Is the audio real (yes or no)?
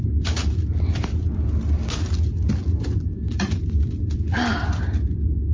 no